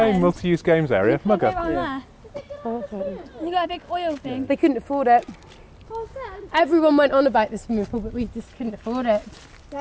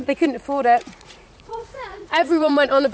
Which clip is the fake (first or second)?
second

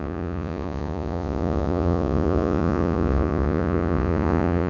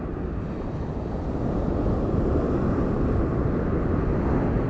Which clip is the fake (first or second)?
first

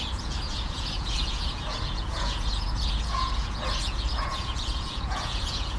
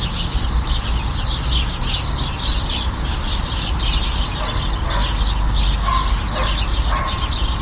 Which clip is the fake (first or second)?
first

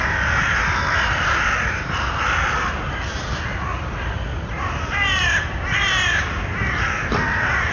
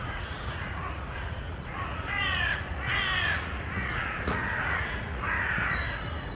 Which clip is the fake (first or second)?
second